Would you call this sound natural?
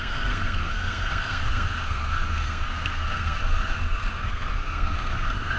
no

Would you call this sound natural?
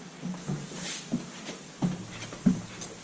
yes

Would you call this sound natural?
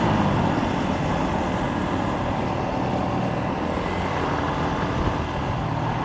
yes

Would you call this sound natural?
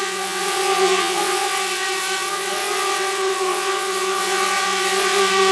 no